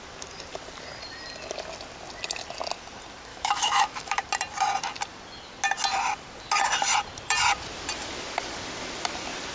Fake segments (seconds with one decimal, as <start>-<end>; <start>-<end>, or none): 3.3-4.2

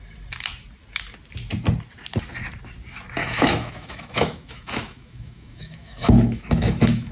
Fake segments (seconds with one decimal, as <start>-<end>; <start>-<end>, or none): 3.2-7.1